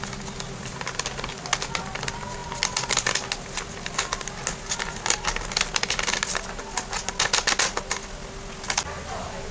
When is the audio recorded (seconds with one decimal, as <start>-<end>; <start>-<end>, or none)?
0.0-9.5